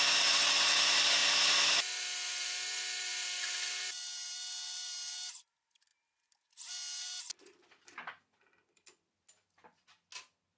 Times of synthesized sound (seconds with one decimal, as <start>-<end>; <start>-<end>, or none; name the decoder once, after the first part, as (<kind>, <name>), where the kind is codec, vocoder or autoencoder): none